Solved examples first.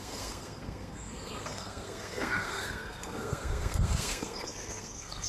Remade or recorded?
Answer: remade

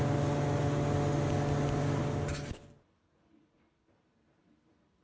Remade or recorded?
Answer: recorded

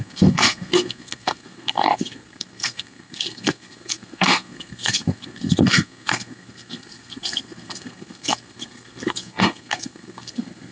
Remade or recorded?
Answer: remade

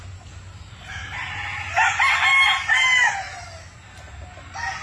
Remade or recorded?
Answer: recorded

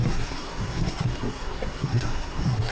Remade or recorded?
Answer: remade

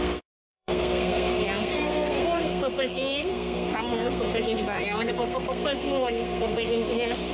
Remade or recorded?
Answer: remade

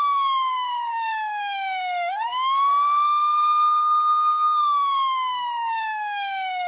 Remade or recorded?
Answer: remade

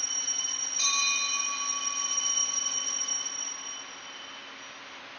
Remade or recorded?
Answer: recorded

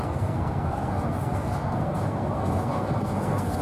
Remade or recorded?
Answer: remade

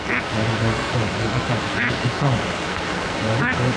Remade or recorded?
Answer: remade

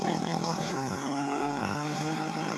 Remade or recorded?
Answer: remade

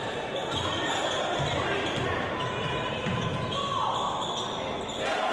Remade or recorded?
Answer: recorded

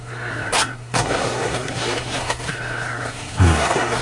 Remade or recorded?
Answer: remade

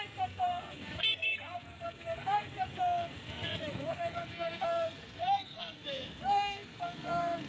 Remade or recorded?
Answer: remade